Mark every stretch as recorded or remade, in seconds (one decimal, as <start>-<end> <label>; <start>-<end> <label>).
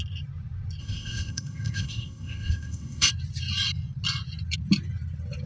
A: 0.0-0.8 recorded; 0.8-3.1 remade; 3.1-5.5 recorded